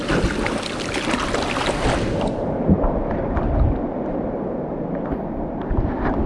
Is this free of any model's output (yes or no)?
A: yes